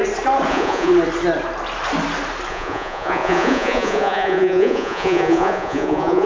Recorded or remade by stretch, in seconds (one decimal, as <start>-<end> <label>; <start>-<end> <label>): 0.0-0.5 recorded; 0.5-0.9 remade; 0.9-2.5 recorded; 2.5-6.3 remade